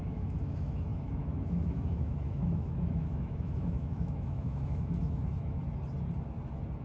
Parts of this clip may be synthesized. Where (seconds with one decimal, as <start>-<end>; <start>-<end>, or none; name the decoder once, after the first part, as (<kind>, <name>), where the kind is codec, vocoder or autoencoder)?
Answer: 0.0-5.6 (autoencoder, DAC-VAE)